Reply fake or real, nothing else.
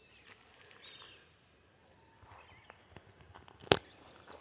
real